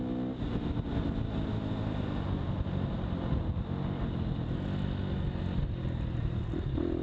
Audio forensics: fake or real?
real